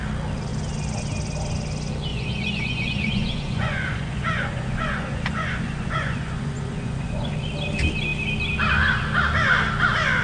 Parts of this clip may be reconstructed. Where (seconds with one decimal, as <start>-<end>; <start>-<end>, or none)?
2.1-7.3